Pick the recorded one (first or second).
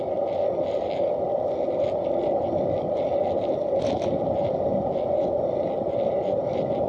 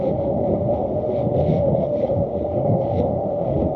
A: first